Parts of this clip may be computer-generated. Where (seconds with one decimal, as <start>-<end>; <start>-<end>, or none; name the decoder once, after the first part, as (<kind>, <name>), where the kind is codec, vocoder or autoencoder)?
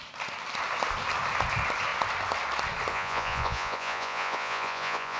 2.9-5.2 (vocoder, Vocos)